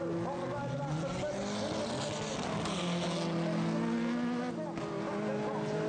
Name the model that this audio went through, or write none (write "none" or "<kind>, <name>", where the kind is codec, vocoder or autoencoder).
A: none